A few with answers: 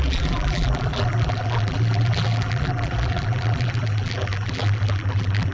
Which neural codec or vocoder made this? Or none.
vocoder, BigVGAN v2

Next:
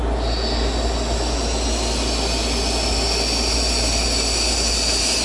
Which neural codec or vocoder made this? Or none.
none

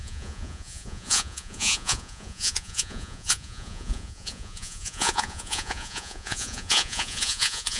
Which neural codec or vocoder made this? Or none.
vocoder, Vocos